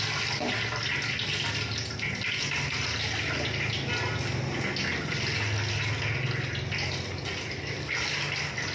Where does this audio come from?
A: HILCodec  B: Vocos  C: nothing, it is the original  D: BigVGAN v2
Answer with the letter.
C